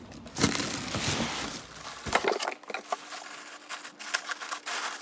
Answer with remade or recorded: recorded